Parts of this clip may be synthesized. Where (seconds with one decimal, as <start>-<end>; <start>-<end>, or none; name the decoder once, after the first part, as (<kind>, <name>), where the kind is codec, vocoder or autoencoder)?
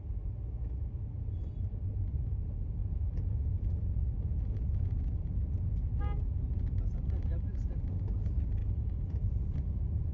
2.8-5.0 (vocoder, Vocos); 8.6-10.1